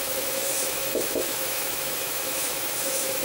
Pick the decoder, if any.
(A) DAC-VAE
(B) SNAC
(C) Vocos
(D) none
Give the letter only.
A